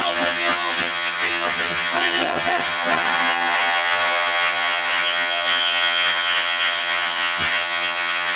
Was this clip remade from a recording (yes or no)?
yes